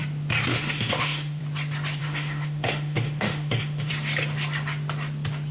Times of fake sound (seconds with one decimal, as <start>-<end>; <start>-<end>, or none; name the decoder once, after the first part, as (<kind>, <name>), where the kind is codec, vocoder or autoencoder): 0.5-1.4 (autoencoder, DAC-VAE); 2.0-3.9